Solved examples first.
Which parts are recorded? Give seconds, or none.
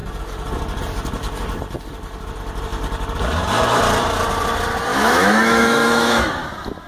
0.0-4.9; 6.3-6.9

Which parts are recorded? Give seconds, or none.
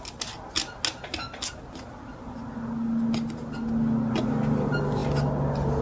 0.0-5.8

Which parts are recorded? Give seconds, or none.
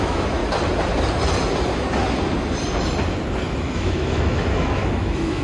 0.4-3.6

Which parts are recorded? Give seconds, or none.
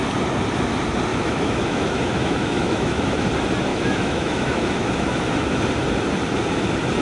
0.0-1.1; 3.3-3.7; 5.6-7.0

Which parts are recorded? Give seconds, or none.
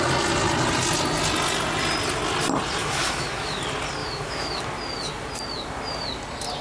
0.0-2.8; 3.6-4.0; 4.6-6.6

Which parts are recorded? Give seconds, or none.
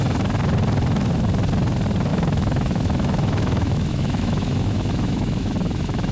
0.0-2.1